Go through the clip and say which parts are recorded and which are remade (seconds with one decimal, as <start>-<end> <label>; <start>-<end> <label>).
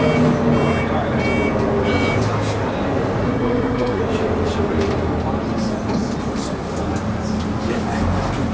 0.0-3.2 recorded; 3.2-4.0 remade; 4.0-8.5 recorded